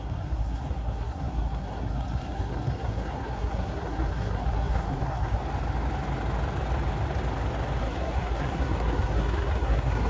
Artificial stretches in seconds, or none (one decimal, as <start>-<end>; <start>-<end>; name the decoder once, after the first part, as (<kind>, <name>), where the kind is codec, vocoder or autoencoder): 0.0-5.4 (codec, SNAC); 7.8-10.1